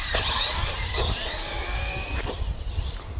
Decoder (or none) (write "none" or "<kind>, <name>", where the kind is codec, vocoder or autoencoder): vocoder, BigVGAN v2